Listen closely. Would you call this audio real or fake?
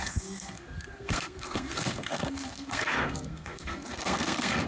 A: fake